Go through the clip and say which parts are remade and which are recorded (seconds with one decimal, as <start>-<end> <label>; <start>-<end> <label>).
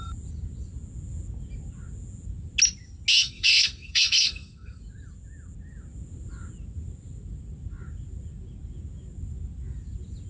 0.0-3.2 recorded; 3.2-4.8 remade; 4.8-10.3 recorded